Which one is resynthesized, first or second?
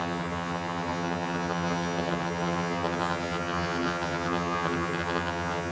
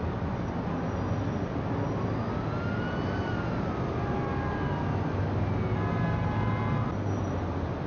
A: first